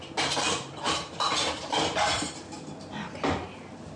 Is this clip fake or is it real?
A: real